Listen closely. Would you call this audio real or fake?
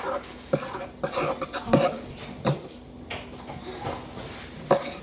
real